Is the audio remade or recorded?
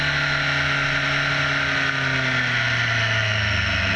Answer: recorded